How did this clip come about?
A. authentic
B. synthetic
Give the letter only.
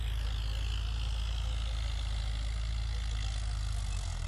A